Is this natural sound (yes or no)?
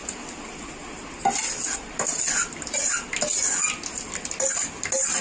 yes